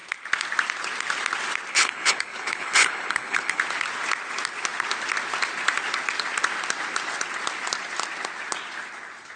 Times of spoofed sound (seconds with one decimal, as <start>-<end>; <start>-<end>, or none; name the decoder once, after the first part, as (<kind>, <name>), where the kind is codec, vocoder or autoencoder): 1.7-3.6 (codec, HILCodec)